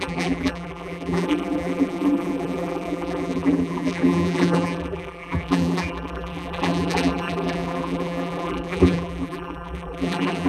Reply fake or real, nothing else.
fake